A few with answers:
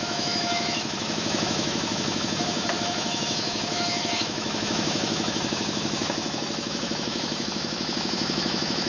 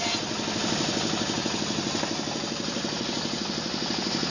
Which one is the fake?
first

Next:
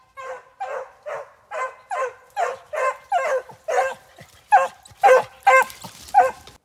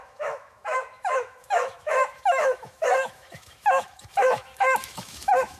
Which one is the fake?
second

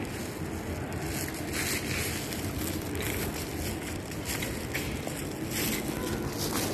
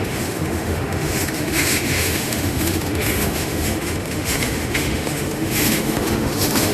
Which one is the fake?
second